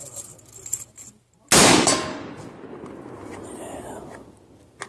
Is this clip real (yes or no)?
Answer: yes